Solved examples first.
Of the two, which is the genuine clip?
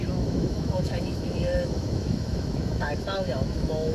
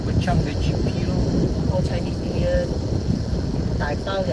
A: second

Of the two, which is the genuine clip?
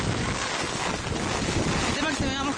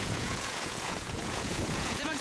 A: first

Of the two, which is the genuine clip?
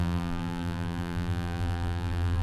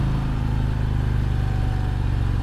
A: second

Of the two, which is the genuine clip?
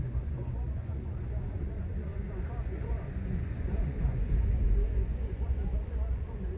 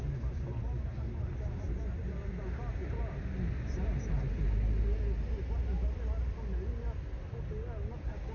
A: second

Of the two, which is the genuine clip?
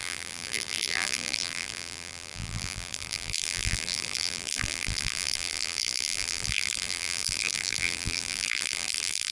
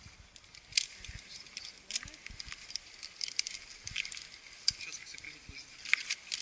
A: second